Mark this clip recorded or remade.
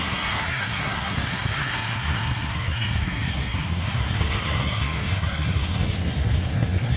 remade